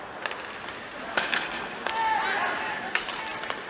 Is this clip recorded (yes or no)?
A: yes